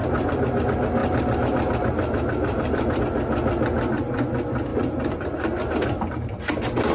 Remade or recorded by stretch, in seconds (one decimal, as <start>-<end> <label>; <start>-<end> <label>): 0.0-0.6 remade; 0.6-1.0 recorded; 1.0-3.0 remade; 3.0-4.7 recorded; 4.7-6.5 remade; 6.5-6.9 recorded